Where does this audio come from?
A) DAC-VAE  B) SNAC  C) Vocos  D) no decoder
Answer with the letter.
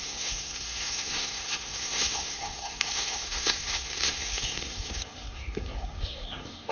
B